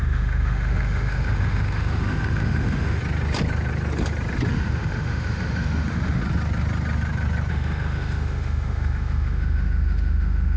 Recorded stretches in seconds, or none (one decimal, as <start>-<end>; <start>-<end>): 3.0-4.5; 6.2-7.5